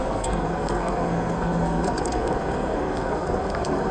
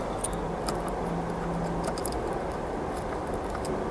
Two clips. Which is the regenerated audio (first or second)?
first